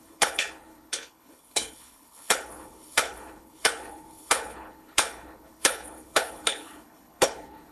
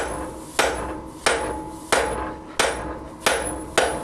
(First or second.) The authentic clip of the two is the second